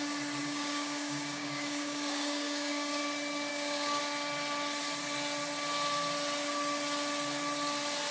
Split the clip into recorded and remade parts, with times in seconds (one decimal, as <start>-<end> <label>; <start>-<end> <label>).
0.0-0.4 recorded; 0.4-3.0 remade; 3.0-3.5 recorded; 3.5-4.0 remade; 4.0-8.1 recorded